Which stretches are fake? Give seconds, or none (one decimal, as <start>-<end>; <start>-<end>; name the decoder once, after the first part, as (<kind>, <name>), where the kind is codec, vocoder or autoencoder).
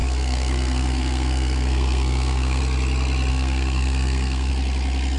0.0-2.6 (codec, SNAC); 3.3-4.5